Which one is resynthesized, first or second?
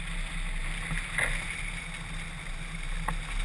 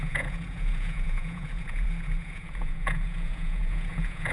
second